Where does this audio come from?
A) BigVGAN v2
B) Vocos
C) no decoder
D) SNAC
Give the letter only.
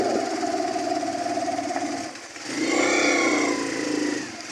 C